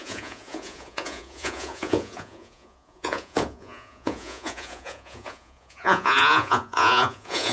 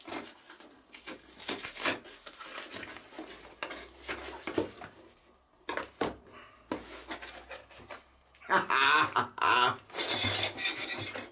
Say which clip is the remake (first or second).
first